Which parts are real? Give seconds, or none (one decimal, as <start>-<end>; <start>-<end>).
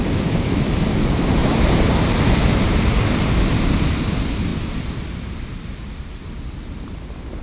none